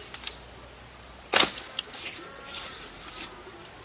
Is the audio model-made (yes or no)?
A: no